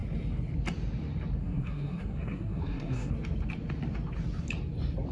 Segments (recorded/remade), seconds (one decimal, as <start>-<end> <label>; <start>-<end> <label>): 0.0-1.4 recorded; 1.4-3.1 remade; 3.1-5.1 recorded